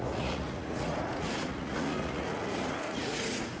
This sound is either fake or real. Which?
fake